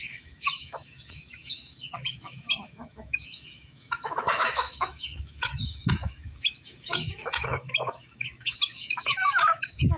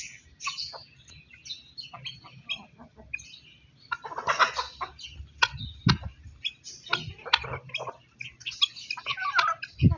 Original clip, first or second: second